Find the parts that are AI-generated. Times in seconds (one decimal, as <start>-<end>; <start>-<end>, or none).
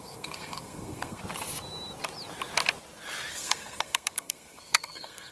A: 0.0-1.2; 3.3-5.3